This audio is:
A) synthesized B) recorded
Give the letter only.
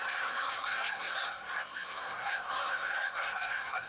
A